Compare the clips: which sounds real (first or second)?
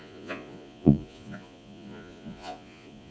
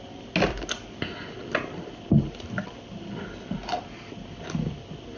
second